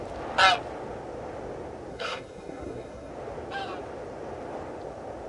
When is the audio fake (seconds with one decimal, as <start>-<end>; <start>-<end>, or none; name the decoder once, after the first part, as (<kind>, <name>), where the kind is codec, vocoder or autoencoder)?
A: 1.9-3.1 (codec, SNAC)